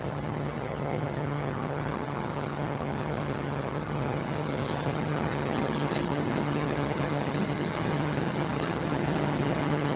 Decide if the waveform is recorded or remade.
remade